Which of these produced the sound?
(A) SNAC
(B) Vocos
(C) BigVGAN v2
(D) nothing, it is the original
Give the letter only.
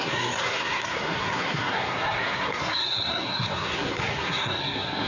A